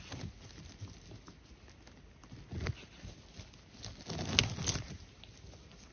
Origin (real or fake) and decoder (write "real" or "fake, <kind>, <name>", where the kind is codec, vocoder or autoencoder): real